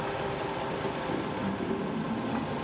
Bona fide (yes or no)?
yes